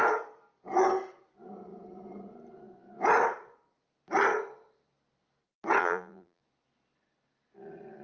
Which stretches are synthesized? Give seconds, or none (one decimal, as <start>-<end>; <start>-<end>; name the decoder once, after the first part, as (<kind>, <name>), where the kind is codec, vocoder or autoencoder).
5.8-6.4 (vocoder, BigVGAN v2)